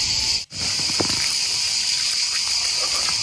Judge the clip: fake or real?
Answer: fake